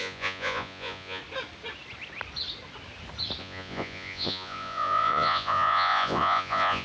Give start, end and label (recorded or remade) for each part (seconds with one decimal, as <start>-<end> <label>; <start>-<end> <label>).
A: 0.0-1.2 remade; 1.2-3.4 recorded; 3.4-6.8 remade